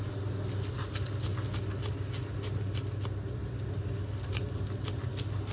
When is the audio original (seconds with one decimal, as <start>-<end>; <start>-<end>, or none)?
0.0-5.5

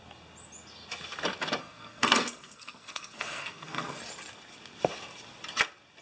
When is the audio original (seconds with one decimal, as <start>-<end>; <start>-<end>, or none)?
0.0-1.6; 4.0-6.0

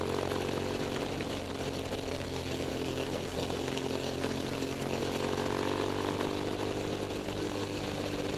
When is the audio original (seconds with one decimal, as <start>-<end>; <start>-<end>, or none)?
0.0-2.1; 5.0-7.2; 7.8-8.4

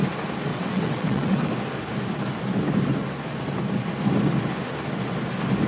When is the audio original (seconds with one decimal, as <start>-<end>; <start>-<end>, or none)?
0.0-0.5; 1.5-5.7

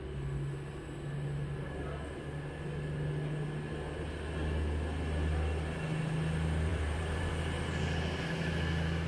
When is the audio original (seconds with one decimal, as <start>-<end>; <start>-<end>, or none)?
0.0-6.7; 7.3-9.1